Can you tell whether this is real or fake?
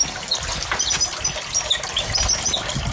real